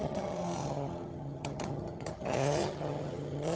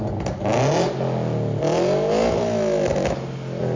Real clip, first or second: second